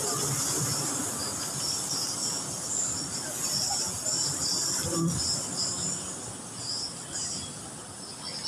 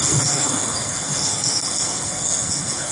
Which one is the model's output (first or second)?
second